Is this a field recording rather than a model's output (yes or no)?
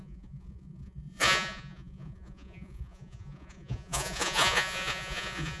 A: no